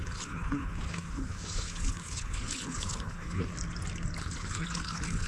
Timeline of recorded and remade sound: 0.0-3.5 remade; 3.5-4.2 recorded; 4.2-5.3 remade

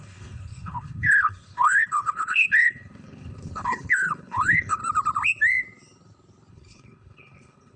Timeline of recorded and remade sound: 0.0-4.8 remade; 4.8-6.5 recorded; 6.5-7.8 remade

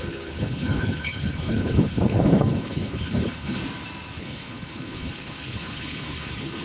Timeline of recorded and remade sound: 0.0-3.6 remade; 3.6-4.2 recorded; 4.2-6.6 remade

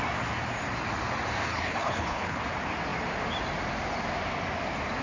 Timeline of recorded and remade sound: 0.0-1.5 recorded; 1.5-2.4 remade; 2.4-5.0 recorded